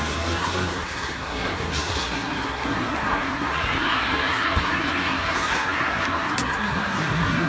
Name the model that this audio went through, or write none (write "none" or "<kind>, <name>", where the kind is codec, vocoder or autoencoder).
codec, SNAC